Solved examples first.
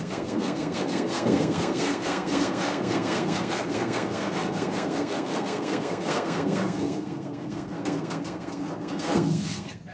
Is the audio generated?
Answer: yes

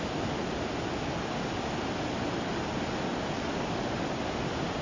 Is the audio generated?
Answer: no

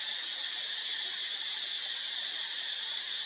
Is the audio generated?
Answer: no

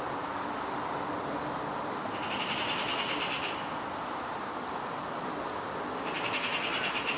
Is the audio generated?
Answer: no